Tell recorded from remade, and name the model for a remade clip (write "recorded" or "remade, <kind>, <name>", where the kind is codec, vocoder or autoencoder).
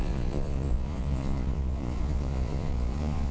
remade, vocoder, Vocos